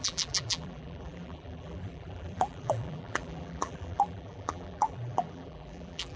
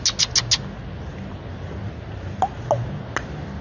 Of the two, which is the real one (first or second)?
second